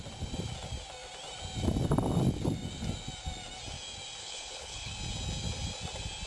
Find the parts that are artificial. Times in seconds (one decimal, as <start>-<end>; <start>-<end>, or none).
4.2-4.9